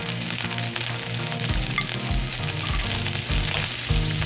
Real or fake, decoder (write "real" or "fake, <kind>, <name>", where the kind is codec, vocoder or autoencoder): real